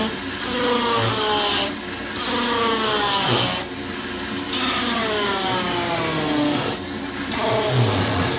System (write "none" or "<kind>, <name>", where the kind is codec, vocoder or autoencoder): none